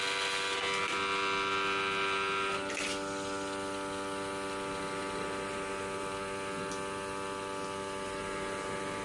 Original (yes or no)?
yes